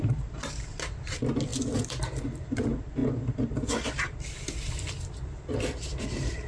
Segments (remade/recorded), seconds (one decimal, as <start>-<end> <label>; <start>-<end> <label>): 0.0-6.5 recorded